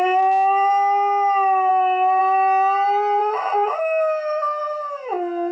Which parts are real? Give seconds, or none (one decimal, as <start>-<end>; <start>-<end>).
0.0-3.2; 3.8-5.5